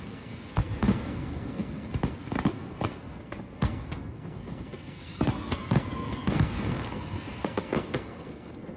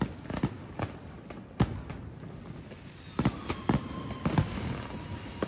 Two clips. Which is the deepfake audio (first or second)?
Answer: first